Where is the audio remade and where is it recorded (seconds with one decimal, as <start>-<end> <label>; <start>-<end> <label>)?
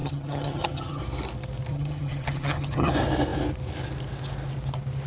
0.0-1.0 remade; 1.0-1.7 recorded; 1.7-2.9 remade; 2.9-5.1 recorded